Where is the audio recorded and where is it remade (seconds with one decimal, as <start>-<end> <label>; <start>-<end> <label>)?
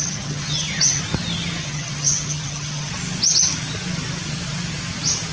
0.0-1.0 remade; 1.0-1.6 recorded; 1.6-2.9 remade; 2.9-5.3 recorded